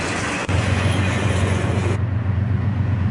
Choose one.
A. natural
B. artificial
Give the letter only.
B